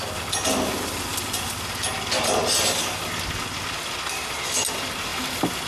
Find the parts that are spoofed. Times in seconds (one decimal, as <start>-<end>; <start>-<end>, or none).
none